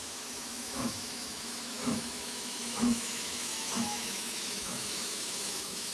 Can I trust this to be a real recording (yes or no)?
no